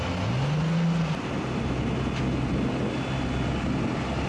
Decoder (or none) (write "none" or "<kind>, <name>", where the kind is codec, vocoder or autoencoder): none